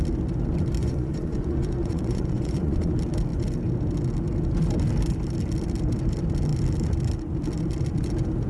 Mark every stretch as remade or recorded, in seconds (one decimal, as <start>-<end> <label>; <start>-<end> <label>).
0.0-0.8 recorded; 0.8-2.9 remade; 2.9-8.5 recorded